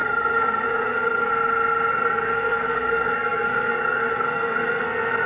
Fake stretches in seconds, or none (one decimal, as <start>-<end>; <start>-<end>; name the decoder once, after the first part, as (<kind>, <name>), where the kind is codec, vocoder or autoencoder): 0.0-1.3 (codec, SNAC); 1.9-5.3